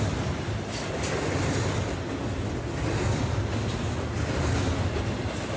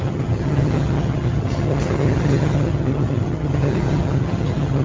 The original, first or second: first